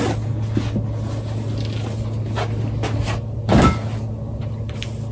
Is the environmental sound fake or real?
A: real